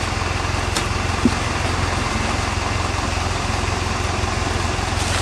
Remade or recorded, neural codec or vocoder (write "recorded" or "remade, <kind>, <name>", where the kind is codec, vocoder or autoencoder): recorded